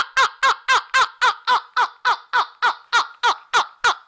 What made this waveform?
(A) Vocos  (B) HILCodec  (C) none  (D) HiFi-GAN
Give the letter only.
C